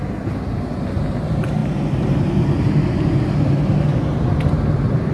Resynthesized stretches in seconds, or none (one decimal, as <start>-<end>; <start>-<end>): none